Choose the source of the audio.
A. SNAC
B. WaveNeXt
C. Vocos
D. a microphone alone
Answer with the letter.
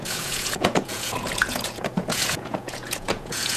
C